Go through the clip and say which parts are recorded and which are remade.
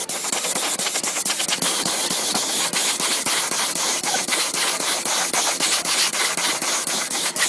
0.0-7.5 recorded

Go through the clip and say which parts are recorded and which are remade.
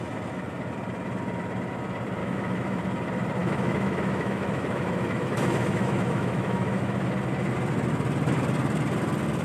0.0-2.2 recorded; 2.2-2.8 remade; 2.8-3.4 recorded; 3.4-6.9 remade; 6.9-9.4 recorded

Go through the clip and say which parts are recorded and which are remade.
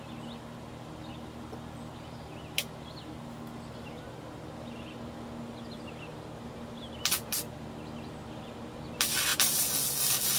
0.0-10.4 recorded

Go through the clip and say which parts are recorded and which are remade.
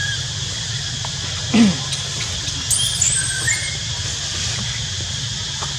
0.0-5.8 recorded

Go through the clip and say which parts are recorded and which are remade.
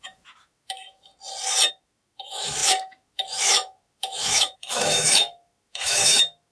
0.0-1.1 remade; 1.1-1.7 recorded; 1.7-6.5 remade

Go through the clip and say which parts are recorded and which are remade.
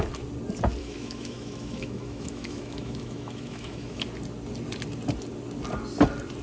0.0-0.8 recorded; 0.8-4.0 remade; 4.0-6.4 recorded